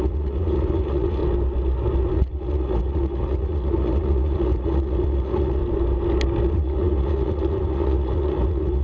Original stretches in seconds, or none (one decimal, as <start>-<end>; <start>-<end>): 1.2-2.1; 5.6-6.5